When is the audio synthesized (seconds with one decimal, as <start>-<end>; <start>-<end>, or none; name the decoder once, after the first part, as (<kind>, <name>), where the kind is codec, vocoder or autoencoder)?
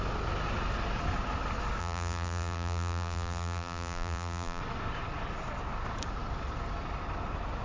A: 1.8-4.6 (vocoder, BigVGAN v2)